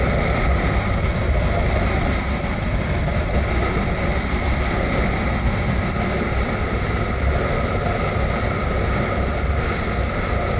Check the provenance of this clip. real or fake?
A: real